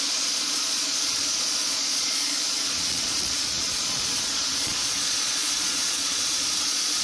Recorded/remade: remade